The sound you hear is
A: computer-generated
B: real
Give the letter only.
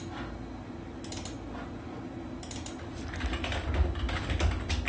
B